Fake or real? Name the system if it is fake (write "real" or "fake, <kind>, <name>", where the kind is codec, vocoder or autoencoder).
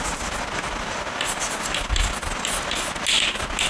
real